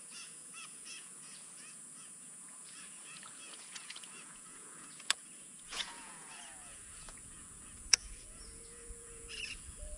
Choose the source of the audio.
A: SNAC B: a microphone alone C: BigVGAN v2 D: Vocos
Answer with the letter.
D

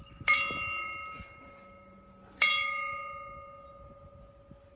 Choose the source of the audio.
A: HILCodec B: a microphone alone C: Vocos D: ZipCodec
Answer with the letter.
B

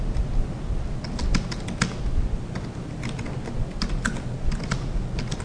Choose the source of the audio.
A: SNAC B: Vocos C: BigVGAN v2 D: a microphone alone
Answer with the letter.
D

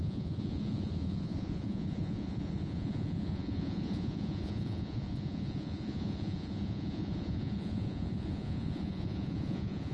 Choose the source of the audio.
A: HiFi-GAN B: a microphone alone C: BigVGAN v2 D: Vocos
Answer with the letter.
D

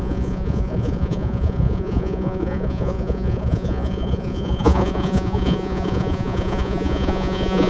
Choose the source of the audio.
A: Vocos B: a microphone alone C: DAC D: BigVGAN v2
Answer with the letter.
A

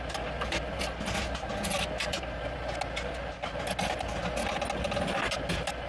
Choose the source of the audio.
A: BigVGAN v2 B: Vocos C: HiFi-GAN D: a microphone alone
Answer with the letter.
D